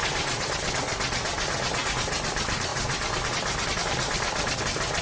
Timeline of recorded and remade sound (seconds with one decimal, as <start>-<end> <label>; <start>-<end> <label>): 0.0-0.7 remade; 0.7-2.7 recorded; 2.7-3.3 remade; 3.3-5.0 recorded